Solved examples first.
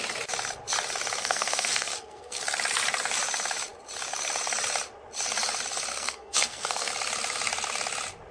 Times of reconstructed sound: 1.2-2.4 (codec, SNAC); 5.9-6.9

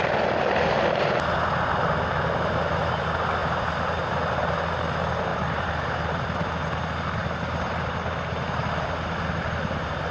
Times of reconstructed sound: 3.4-4.1 (vocoder, BigVGAN v2); 5.3-6.5

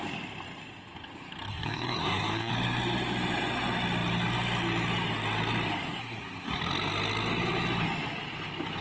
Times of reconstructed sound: 1.5-2.5 (codec, SNAC); 6.0-6.6